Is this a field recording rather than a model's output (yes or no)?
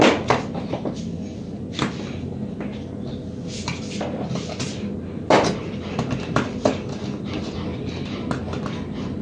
yes